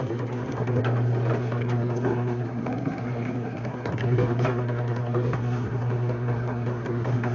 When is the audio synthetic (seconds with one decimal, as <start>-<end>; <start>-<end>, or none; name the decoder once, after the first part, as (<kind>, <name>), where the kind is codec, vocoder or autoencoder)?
0.0-0.8 (codec, SNAC); 1.4-7.3